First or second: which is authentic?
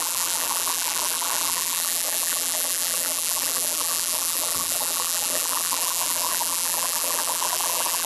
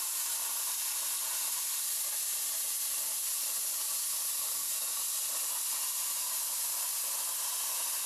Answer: second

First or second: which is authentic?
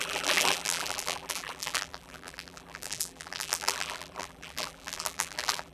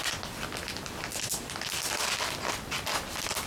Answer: second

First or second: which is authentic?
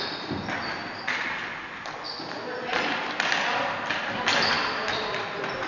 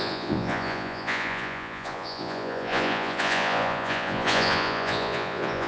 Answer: first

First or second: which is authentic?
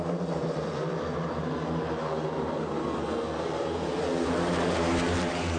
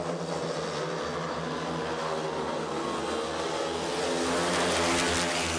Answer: second